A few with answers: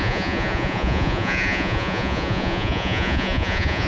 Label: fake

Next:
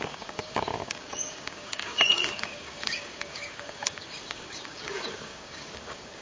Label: fake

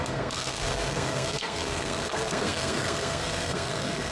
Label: fake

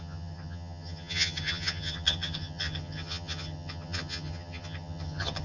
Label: fake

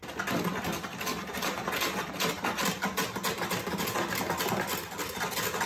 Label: real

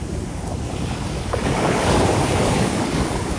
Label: fake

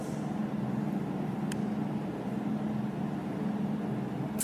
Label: real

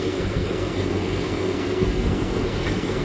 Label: fake